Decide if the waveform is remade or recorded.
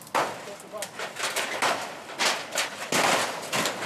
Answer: recorded